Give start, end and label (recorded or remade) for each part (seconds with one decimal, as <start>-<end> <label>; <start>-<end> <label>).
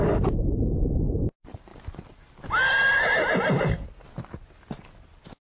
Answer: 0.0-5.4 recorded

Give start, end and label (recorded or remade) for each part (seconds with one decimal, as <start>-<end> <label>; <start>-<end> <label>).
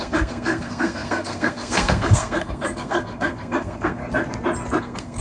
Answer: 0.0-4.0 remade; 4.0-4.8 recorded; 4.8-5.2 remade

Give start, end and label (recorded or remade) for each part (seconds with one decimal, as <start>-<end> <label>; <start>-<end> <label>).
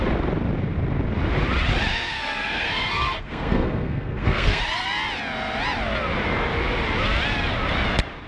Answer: 0.0-1.9 recorded; 1.9-4.6 remade; 4.6-8.3 recorded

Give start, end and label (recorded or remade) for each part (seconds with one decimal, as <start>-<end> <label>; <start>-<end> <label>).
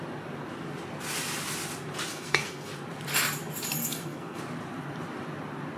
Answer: 0.0-2.1 recorded; 2.1-2.7 remade; 2.7-3.8 recorded; 3.8-4.4 remade; 4.4-5.8 recorded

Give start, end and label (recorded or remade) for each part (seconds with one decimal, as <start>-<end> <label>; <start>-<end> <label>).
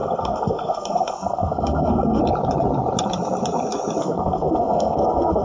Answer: 0.0-2.2 remade; 2.2-4.0 recorded; 4.0-5.4 remade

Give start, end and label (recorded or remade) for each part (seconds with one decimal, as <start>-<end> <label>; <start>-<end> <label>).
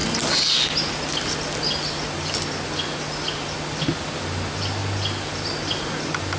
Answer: 0.0-6.4 recorded